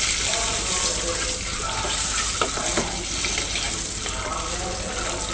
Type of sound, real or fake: real